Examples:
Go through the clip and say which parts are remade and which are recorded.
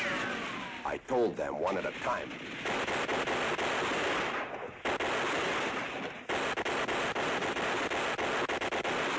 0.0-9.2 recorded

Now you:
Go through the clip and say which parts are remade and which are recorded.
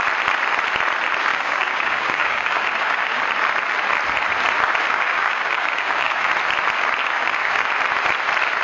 0.0-1.3 recorded; 1.3-3.2 remade; 3.2-4.9 recorded; 4.9-6.3 remade; 6.3-7.0 recorded; 7.0-7.7 remade; 7.7-8.6 recorded